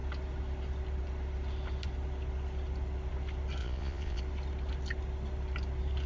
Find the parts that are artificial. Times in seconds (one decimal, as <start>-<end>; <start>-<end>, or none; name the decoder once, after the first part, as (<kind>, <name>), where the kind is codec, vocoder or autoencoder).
3.6-4.2 (vocoder, Vocos)